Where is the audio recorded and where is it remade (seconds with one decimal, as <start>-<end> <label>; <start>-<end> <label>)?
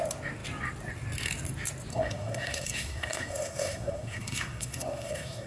0.0-1.9 recorded; 1.9-5.5 remade